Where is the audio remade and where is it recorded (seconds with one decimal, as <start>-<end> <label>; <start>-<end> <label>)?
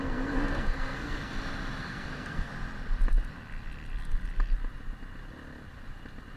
0.0-1.3 remade; 1.3-1.8 recorded; 1.8-2.5 remade; 2.5-6.4 recorded